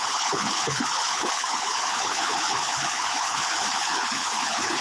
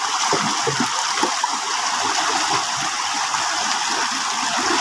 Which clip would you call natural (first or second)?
second